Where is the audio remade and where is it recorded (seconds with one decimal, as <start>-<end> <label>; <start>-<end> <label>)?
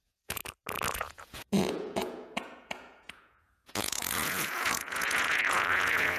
0.0-0.4 remade; 0.4-0.9 recorded; 0.9-6.2 remade